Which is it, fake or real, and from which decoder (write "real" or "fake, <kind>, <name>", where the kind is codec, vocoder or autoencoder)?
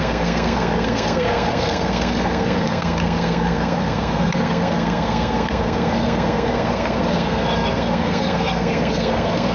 fake, codec, SNAC